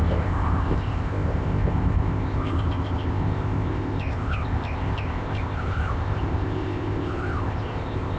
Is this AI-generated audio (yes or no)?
yes